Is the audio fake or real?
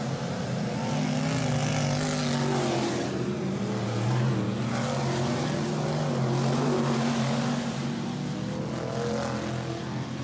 real